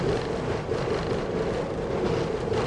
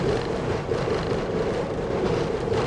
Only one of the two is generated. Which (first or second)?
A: second